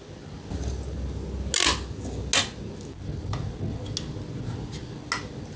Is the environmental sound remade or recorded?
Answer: recorded